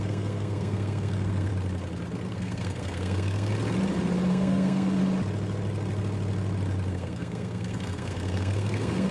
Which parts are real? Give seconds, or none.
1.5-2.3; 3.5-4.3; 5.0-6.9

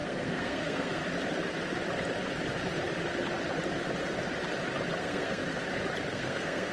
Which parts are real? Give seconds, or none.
1.0-5.0; 5.4-6.1

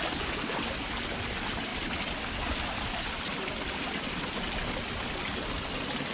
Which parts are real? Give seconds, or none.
0.0-6.1

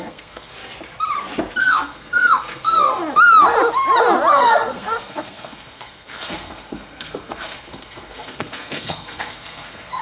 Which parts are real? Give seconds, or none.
0.5-1.6; 3.0-4.3

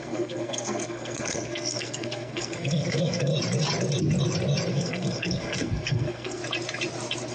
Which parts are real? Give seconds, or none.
3.3-4.7; 6.4-7.3

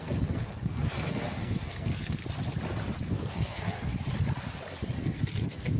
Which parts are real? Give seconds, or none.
2.2-3.1; 3.9-5.0

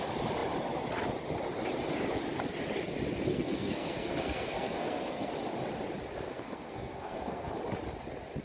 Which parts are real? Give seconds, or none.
0.0-3.3; 5.3-6.3; 7.5-8.4